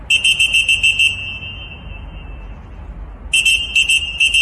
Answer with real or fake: real